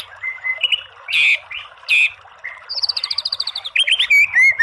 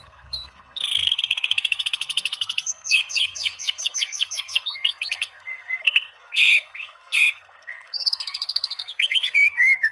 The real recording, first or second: first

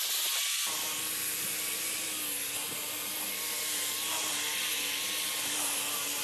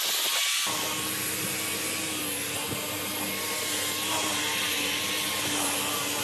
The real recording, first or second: second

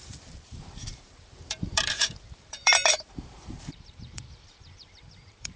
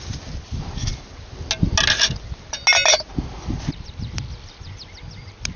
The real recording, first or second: second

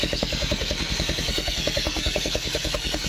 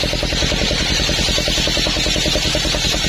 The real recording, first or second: second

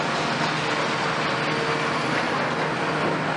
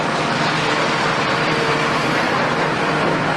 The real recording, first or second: first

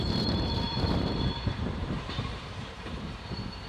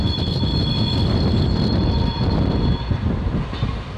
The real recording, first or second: second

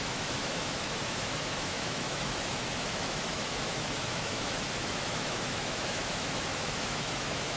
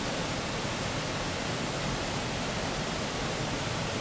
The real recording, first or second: second